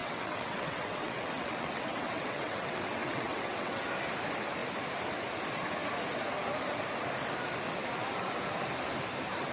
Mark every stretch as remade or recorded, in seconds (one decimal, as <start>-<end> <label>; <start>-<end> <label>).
0.0-3.8 remade; 3.8-9.5 recorded